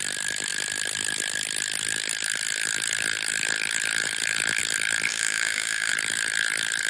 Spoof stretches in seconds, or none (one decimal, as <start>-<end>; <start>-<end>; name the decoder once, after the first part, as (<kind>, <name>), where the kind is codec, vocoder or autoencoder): 5.1-5.9 (autoencoder, DAC-VAE)